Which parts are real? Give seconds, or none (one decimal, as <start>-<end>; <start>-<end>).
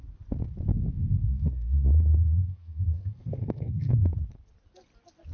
0.0-0.7; 3.9-5.3